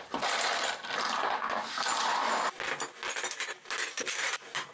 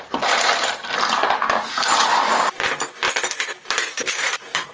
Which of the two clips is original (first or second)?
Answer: first